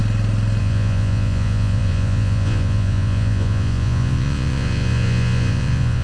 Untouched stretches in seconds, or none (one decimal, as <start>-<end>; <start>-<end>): 0.0-0.6